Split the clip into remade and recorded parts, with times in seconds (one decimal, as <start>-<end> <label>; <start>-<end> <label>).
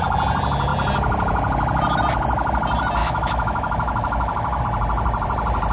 0.0-3.0 recorded; 3.0-4.6 remade; 4.6-5.7 recorded